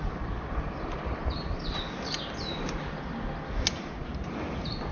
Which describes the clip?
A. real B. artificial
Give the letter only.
A